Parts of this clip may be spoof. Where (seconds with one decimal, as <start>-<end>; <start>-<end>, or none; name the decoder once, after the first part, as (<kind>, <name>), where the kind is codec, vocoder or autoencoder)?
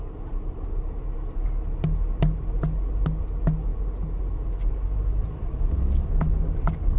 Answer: none